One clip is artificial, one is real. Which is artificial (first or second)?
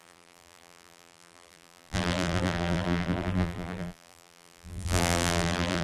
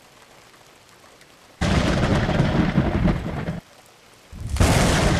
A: first